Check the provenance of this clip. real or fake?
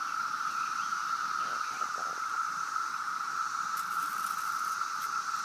real